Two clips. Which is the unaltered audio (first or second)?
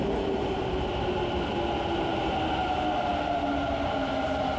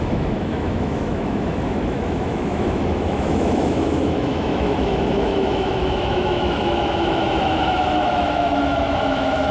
first